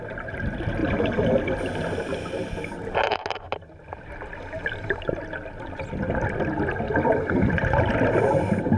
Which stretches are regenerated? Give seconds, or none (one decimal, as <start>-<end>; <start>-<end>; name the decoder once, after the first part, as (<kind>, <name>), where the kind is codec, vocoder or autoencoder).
none